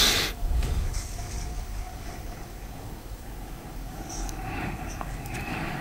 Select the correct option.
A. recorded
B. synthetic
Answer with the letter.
B